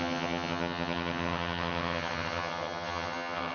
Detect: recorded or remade remade